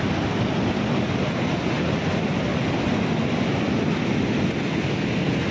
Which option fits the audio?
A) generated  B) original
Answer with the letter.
B